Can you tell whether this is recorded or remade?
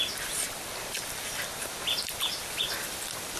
remade